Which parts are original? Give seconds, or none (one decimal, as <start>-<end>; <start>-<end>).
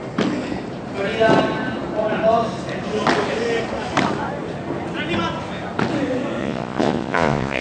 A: 0.0-6.4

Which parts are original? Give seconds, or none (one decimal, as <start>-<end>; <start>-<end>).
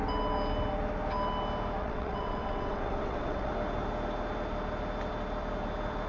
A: 0.0-1.8; 3.5-6.1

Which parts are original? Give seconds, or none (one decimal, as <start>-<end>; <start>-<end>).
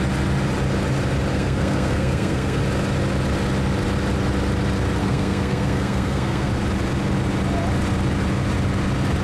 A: 0.0-1.3; 2.6-5.0; 6.5-9.2